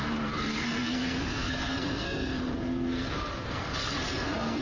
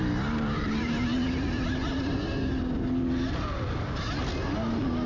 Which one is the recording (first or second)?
second